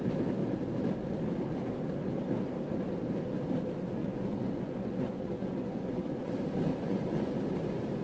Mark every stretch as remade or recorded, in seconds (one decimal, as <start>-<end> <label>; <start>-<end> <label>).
0.0-4.0 recorded; 4.0-6.3 remade; 6.3-6.7 recorded; 6.7-7.4 remade; 7.4-8.0 recorded